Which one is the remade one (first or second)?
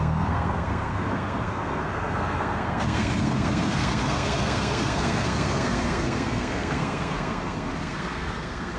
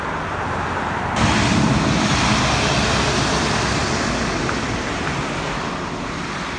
first